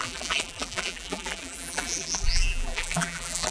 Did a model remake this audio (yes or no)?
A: yes